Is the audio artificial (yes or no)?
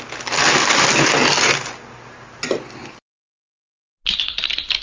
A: no